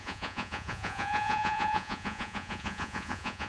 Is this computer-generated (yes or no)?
yes